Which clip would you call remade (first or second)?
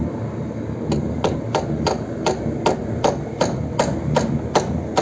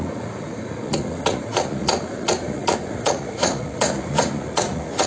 second